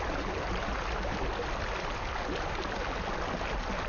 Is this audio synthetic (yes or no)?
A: no